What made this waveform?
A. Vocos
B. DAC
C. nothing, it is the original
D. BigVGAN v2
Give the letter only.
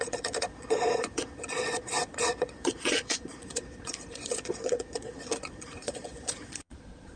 A